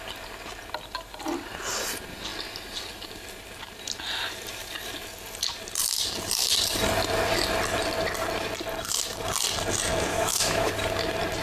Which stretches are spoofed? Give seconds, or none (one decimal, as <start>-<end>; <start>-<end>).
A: 10.1-10.7